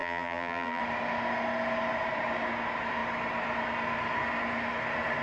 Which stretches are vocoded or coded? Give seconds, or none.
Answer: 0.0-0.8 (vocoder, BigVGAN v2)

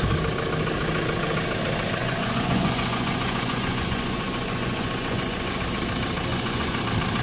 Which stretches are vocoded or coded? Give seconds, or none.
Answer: 2.0-5.6 (vocoder, Vocos); 6.3-6.8

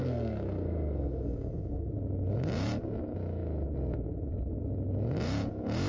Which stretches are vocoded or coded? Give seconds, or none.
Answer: 0.0-1.9 (codec, SNAC)

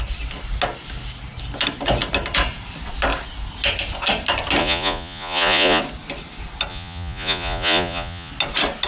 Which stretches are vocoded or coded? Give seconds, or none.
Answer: 4.6-5.8 (vocoder, Vocos); 6.7-8.3

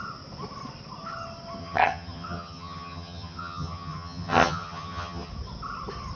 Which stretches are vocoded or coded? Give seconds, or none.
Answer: 1.6-5.3 (vocoder, HiFi-GAN)

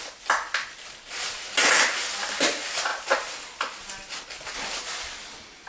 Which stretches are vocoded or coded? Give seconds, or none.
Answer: none

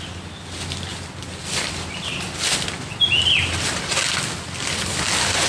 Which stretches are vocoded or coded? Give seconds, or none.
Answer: none

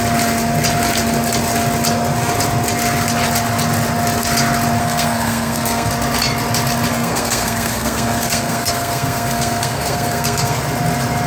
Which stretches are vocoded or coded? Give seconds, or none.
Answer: 4.8-5.9 (codec, SNAC); 6.9-10.6